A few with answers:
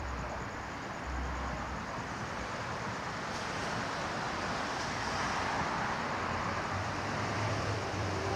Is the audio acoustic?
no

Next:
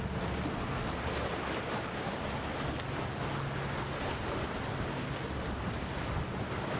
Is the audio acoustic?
yes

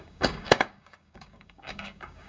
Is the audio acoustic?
no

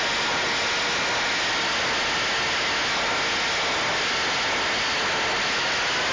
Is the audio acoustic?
yes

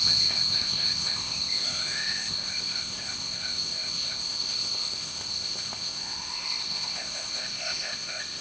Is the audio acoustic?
no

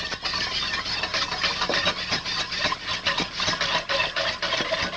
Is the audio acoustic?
yes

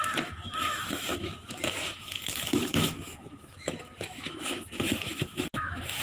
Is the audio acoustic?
no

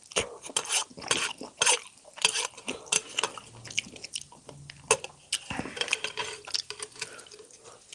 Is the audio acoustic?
yes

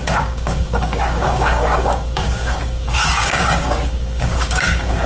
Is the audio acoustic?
no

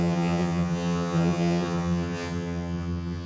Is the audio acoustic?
no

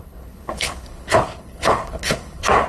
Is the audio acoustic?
no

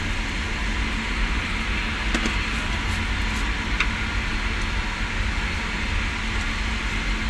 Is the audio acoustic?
yes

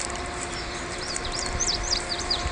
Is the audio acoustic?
no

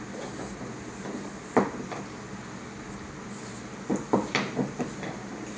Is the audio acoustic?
yes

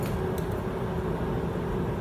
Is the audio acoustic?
yes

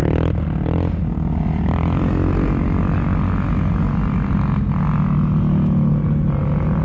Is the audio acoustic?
yes